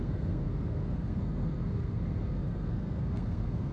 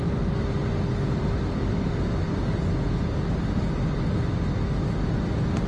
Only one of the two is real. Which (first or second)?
second